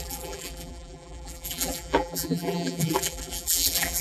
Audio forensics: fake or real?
fake